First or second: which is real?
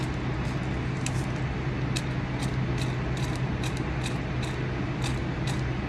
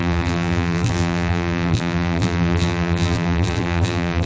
first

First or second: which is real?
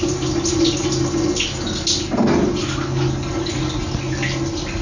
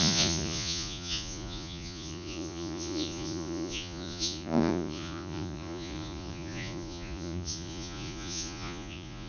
first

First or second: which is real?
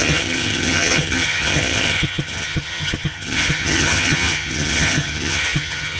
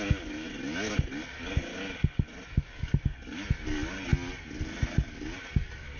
second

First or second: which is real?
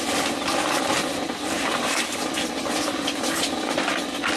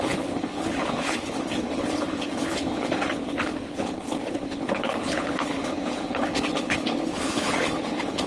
first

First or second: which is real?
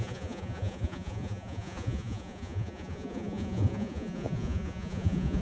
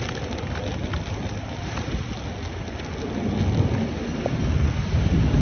second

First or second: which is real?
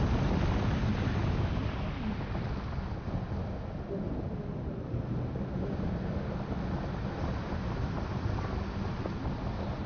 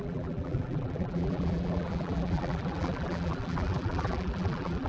first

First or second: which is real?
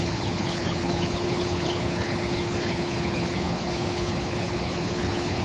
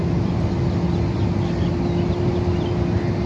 second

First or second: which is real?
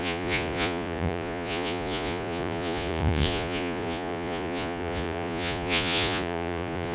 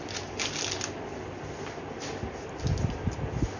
second